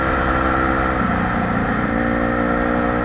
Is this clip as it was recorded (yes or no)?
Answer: yes